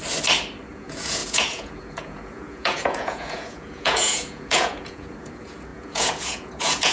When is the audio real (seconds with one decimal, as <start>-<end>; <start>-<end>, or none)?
0.0-0.7

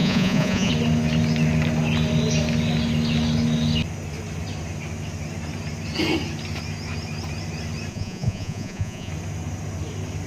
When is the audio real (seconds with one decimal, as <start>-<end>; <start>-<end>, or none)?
0.7-7.9; 9.1-10.3

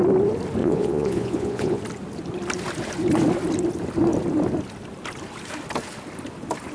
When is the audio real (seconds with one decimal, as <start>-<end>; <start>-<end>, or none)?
0.0-0.6; 1.8-6.7

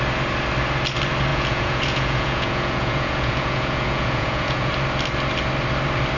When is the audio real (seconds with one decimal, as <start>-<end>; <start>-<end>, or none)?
0.0-1.3; 4.7-6.2

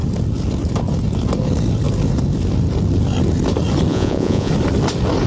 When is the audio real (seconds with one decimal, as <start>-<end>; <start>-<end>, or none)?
0.0-3.9; 4.5-5.3

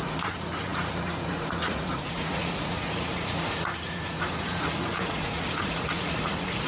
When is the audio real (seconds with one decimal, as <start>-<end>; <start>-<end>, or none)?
none